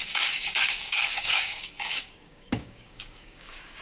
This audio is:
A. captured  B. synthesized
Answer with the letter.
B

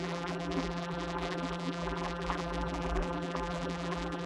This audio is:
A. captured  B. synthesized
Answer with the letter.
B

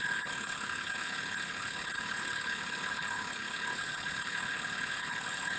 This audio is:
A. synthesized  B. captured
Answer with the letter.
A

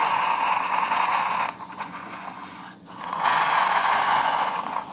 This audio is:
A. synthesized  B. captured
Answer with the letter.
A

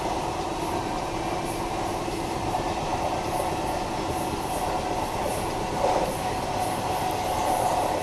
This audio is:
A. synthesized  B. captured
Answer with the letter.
B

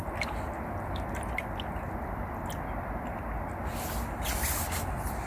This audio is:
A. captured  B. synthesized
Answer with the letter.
A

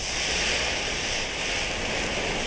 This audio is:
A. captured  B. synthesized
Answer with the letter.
A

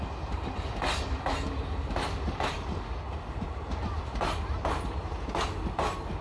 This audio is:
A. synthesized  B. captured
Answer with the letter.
B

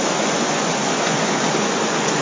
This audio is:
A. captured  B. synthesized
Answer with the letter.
B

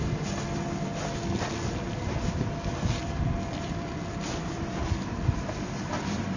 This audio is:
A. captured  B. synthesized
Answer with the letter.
A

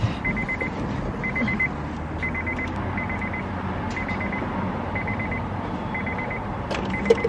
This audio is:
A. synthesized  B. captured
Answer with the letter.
B